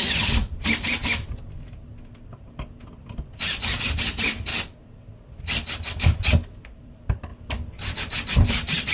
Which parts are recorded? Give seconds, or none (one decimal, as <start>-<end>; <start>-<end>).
1.0-3.4; 4.5-5.4

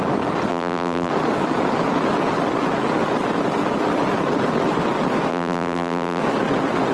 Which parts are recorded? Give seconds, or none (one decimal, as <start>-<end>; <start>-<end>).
0.0-0.5; 1.1-5.3; 6.2-6.9

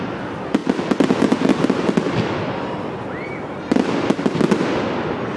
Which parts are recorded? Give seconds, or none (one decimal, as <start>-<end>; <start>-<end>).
0.0-5.4

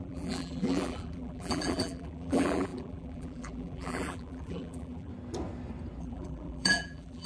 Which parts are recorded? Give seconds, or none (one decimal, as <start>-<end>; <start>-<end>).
5.1-6.0

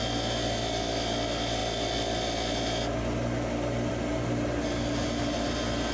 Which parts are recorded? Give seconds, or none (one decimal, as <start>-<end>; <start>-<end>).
0.0-5.9

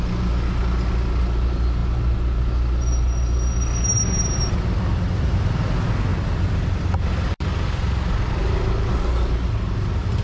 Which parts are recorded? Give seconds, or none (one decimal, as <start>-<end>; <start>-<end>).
0.0-3.9; 5.4-6.1; 8.9-10.2